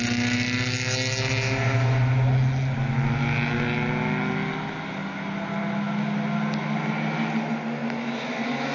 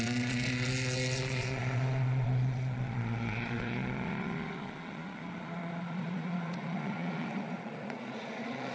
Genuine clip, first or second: first